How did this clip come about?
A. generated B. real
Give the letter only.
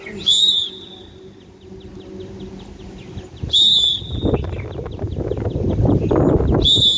B